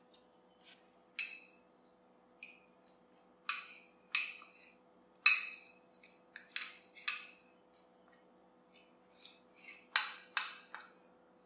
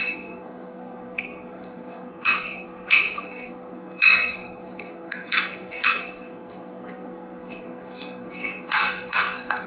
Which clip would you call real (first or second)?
first